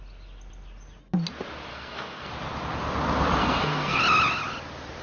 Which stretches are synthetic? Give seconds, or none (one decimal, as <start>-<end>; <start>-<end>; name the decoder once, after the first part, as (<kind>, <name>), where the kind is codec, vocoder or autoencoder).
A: 1.7-2.3 (codec, SNAC); 3.4-4.0